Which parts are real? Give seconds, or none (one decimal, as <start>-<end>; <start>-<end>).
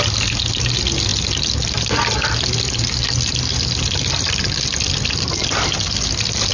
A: 0.0-6.5